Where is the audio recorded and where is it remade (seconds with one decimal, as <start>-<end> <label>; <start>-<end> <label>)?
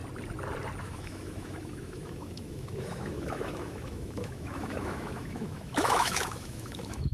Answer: 0.0-0.8 recorded; 0.8-7.1 remade